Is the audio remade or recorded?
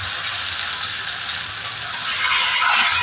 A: recorded